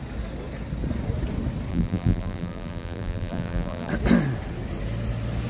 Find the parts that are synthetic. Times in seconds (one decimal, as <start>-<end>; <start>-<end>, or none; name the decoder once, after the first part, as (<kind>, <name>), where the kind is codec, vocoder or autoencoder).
1.7-3.9 (vocoder, BigVGAN v2)